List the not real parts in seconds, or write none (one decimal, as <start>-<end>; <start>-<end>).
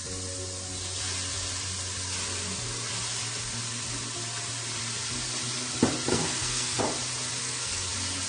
6.1-6.8; 7.4-7.9